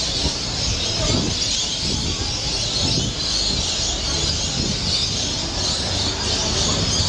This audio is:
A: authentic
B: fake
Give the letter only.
A